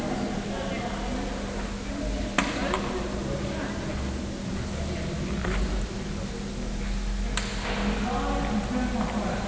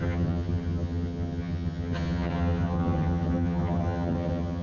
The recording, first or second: first